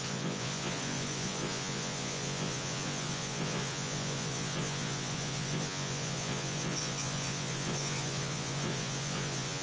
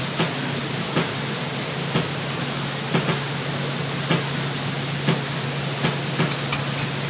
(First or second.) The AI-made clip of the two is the first